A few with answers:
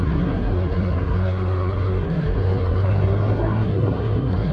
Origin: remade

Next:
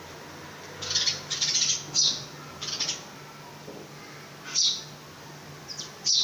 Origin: recorded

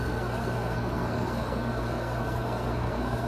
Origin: remade